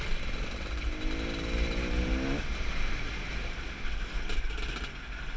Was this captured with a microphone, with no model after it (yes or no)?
yes